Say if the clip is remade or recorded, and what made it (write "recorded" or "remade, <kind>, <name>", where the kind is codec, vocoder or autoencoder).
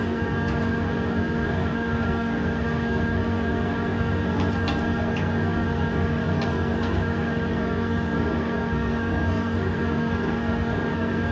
remade, codec, SNAC